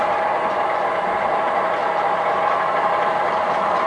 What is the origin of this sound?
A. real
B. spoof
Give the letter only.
A